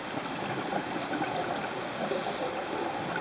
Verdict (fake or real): real